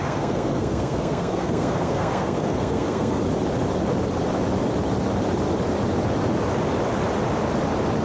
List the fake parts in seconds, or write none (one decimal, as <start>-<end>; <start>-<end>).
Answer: 0.0-3.2

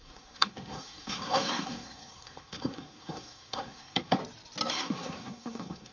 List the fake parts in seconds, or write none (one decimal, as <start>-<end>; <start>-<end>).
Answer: 0.0-4.2; 4.7-5.9

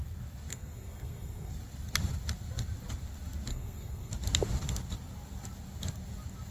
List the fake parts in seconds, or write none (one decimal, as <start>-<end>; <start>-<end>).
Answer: 0.5-1.5; 3.5-4.1

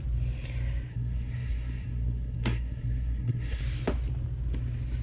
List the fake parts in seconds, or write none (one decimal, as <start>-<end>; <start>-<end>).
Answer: 0.9-3.6